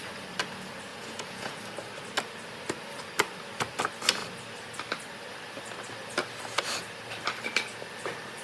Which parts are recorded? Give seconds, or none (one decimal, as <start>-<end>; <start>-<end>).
0.0-0.9; 1.6-8.4